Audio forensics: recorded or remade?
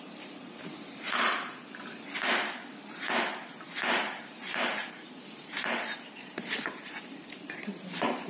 remade